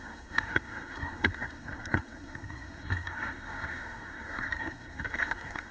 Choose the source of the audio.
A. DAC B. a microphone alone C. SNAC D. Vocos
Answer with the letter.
C